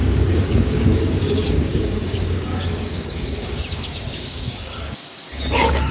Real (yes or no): no